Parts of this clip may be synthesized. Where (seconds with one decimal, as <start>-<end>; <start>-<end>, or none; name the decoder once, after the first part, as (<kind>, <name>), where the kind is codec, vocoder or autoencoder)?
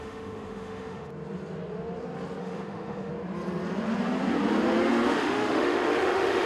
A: 0.0-1.1 (autoencoder, DAC-VAE); 2.4-3.1; 5.1-6.5